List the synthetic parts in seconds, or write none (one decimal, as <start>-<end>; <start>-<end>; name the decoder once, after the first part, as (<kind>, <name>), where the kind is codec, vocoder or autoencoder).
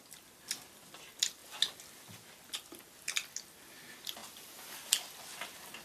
none